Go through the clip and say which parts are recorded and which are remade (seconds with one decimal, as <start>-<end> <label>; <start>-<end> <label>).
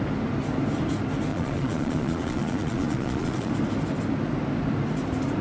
0.0-1.3 recorded; 1.3-3.5 remade; 3.5-5.4 recorded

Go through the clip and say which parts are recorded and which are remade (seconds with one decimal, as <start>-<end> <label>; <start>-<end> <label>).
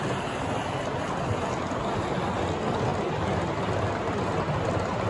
0.0-5.1 recorded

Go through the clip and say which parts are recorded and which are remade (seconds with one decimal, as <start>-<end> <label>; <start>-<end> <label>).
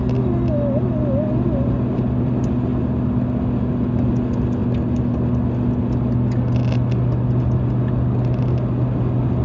0.0-9.4 recorded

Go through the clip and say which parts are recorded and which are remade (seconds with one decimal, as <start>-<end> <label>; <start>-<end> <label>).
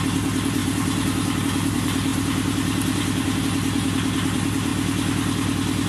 0.0-4.7 remade; 4.7-5.9 recorded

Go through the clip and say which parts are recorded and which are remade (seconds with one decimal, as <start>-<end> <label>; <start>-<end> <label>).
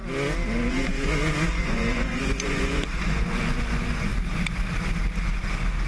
0.0-0.7 recorded; 0.7-4.1 remade; 4.1-5.9 recorded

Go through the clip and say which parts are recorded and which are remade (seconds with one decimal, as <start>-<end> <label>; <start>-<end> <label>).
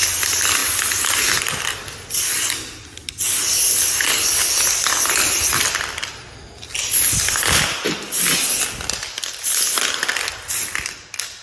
0.0-11.4 recorded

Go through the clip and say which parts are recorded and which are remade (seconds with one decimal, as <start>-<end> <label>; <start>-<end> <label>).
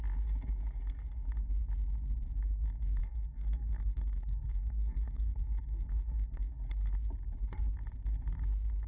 0.0-3.0 recorded; 3.0-6.5 remade; 6.5-8.9 recorded